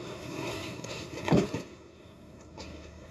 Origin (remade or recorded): remade